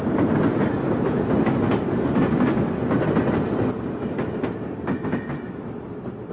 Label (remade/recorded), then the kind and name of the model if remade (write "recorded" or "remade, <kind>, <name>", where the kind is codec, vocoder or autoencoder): recorded